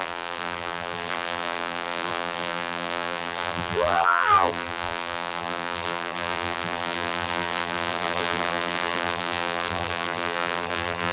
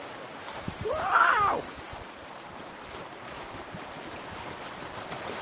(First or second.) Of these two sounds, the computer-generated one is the first